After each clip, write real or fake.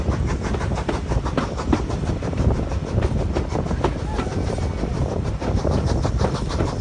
real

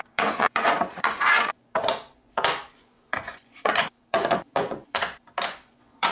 fake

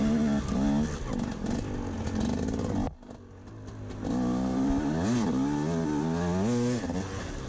real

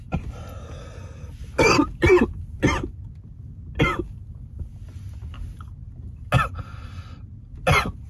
real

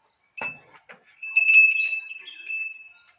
real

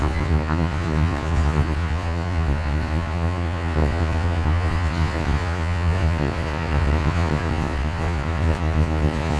fake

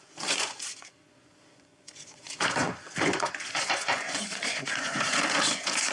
fake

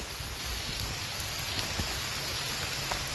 real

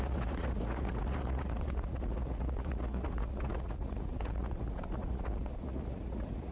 fake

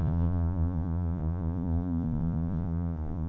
fake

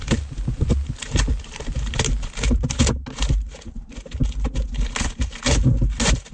real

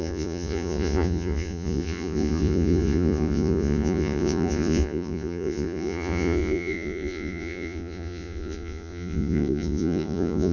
fake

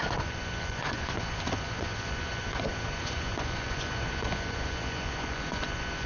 fake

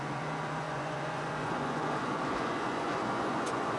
fake